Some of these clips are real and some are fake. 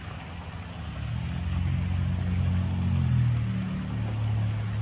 real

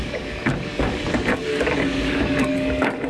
fake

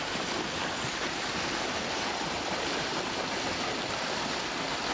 real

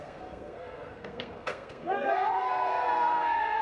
fake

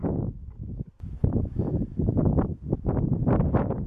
real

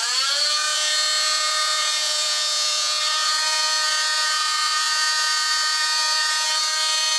fake